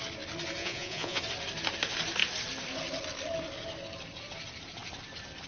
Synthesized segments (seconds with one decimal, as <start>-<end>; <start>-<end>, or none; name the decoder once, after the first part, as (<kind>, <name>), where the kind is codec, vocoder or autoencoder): 0.6-1.2 (vocoder, Vocos)